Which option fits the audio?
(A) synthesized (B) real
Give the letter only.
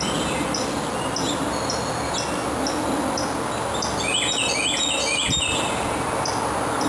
B